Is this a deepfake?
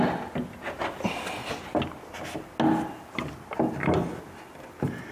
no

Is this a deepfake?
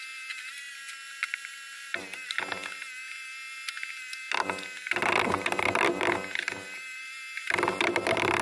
no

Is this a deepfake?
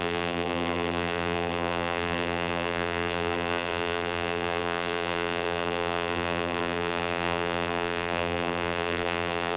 yes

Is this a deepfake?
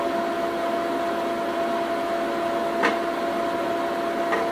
no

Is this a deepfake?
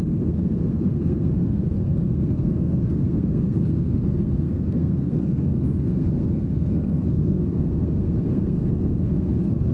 yes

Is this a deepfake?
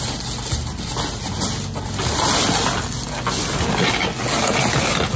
no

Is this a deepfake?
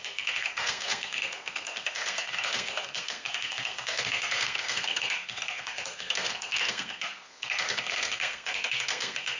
yes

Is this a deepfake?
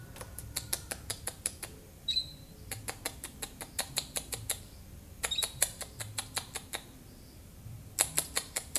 yes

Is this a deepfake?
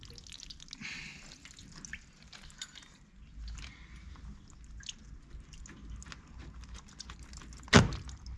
no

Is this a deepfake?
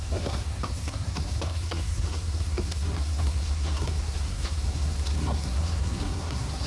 yes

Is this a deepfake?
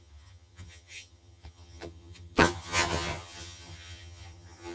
yes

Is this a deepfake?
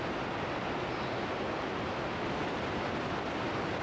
no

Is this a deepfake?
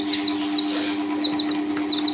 no